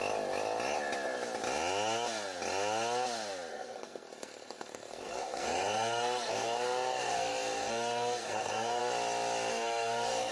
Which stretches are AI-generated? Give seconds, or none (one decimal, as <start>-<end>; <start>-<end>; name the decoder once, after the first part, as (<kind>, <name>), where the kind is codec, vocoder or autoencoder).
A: 3.5-8.8 (codec, SNAC); 9.5-10.3